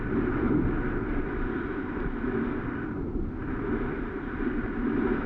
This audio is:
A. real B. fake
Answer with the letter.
A